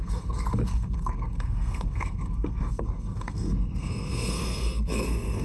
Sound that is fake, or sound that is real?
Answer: fake